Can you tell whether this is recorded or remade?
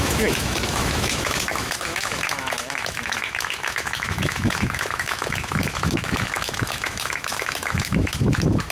remade